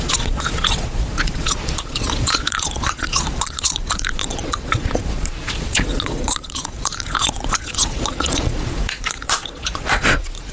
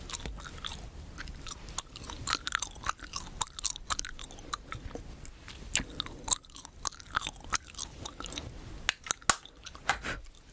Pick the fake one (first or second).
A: first